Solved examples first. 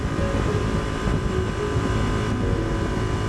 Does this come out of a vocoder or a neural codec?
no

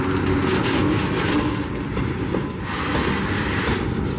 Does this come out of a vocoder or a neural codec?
no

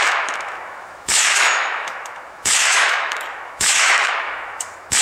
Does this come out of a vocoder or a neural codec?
yes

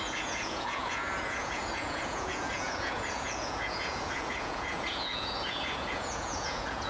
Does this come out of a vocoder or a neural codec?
yes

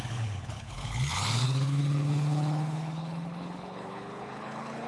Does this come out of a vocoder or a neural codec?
yes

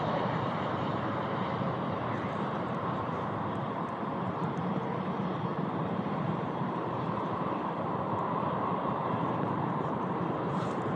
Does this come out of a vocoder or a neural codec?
yes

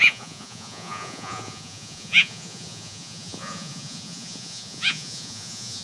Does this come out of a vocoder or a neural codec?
yes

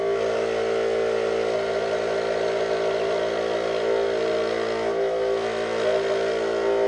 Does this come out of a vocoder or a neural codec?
no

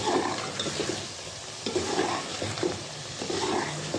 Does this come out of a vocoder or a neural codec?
no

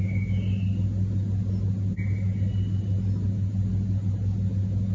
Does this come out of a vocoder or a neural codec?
no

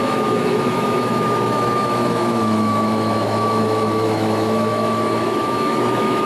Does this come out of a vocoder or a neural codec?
yes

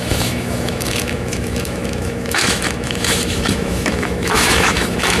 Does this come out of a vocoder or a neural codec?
yes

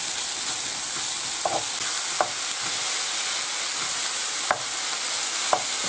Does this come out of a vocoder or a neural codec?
no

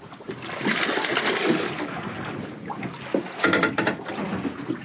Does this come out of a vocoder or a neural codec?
no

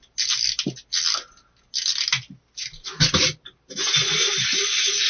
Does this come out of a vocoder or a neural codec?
no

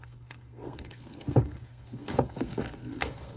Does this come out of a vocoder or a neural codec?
yes